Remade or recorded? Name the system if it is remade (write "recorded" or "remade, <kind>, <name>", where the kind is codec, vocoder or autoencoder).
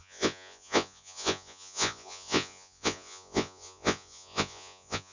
remade, vocoder, Vocos